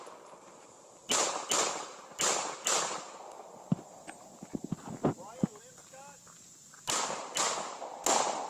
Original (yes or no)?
yes